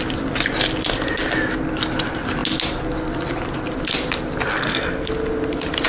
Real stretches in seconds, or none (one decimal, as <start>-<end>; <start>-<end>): 0.0-4.5; 5.1-5.9